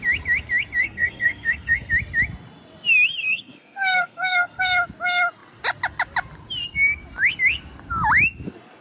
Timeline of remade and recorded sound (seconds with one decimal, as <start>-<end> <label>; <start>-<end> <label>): 0.0-0.8 recorded; 0.8-1.9 remade; 1.9-3.2 recorded; 3.2-4.6 remade; 4.6-8.8 recorded